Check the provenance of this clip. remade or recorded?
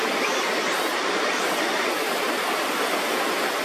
recorded